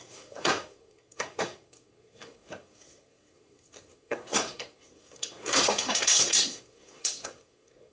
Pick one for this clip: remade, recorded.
remade